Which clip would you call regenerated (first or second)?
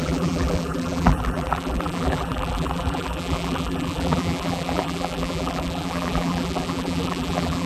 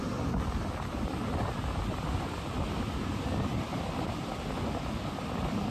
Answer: first